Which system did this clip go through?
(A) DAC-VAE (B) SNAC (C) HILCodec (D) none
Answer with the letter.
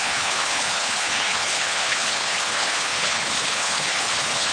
C